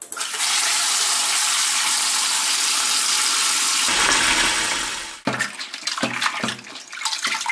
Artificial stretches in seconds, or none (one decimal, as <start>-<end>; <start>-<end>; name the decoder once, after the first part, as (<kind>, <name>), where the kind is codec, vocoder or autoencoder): none